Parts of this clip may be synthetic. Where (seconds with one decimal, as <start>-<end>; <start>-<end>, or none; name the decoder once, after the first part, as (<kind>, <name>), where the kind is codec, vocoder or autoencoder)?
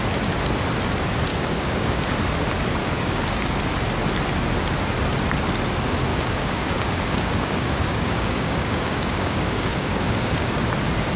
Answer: 1.3-2.0 (codec, DAC); 2.8-3.6; 6.1-10.6